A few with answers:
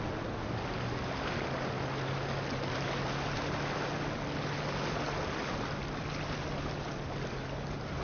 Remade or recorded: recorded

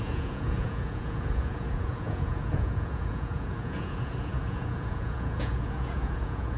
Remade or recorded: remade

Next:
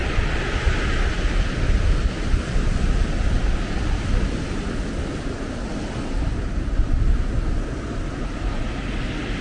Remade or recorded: recorded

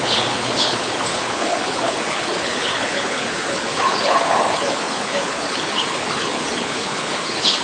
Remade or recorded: remade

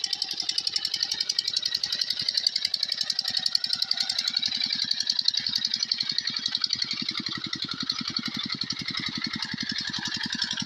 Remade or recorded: recorded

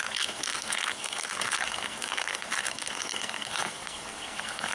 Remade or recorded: remade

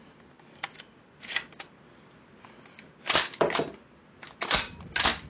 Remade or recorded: recorded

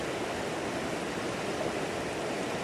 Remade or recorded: recorded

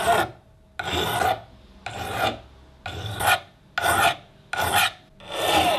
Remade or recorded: recorded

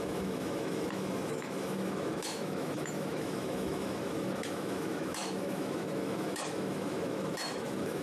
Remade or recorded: remade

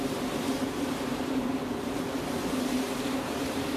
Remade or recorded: remade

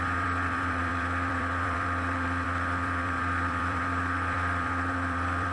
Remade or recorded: remade